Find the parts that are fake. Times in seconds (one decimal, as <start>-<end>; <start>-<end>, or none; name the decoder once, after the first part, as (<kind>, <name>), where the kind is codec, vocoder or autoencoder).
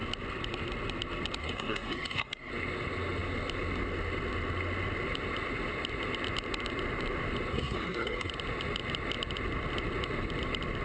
1.4-2.5 (codec, SNAC); 7.5-8.3